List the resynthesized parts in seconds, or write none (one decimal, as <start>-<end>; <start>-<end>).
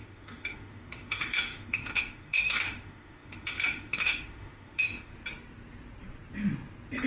0.0-5.1